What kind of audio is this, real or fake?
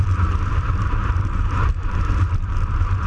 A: fake